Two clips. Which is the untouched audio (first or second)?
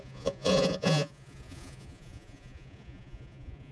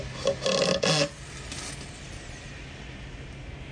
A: second